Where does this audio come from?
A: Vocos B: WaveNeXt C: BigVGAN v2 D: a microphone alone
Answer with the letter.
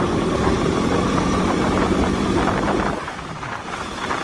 C